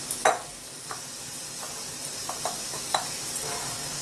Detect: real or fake real